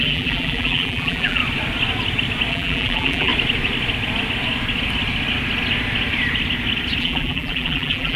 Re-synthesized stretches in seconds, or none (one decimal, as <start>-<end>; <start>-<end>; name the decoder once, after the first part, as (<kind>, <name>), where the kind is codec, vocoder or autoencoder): 0.0-1.4 (vocoder, BigVGAN v2); 2.5-3.3; 7.0-8.2